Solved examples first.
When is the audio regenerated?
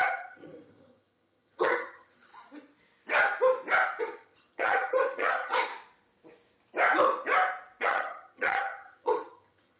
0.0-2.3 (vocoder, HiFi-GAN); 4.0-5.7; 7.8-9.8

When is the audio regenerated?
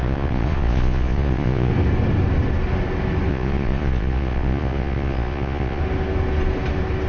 0.0-1.7 (vocoder, Vocos); 3.3-5.8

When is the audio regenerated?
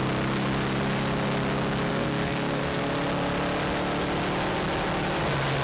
1.9-2.8 (codec, SNAC)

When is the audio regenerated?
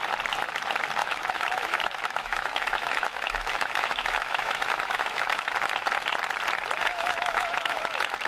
1.0-5.5 (autoencoder, DAC-VAE); 6.8-8.3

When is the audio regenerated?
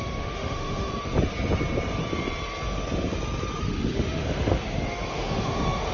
0.0-0.9 (autoencoder, DAC-VAE); 3.6-5.9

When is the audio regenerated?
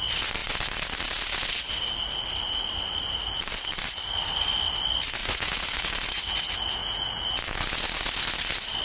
5.2-5.9 (vocoder, Vocos); 6.8-7.4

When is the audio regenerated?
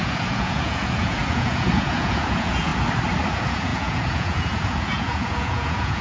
0.0-2.7 (vocoder, Vocos); 3.3-6.0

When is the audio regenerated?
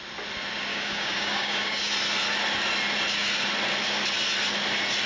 0.7-1.9 (codec, DAC)